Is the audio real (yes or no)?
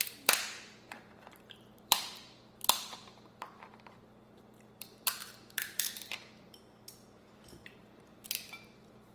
no